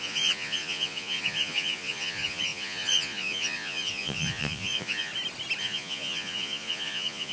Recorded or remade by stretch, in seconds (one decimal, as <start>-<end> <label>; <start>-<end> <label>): 0.0-5.1 remade; 5.1-5.6 recorded; 5.6-7.3 remade